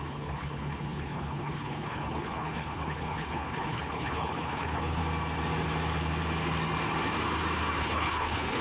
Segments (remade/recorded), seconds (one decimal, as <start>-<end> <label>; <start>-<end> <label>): 0.0-5.0 remade; 5.0-7.8 recorded; 7.8-8.6 remade